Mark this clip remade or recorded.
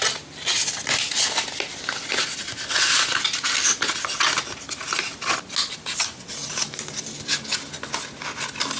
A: recorded